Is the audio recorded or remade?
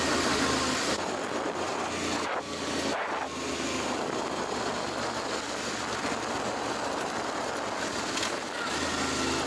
recorded